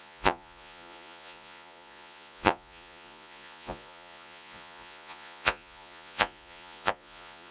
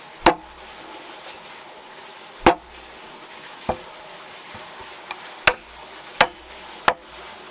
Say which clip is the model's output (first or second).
first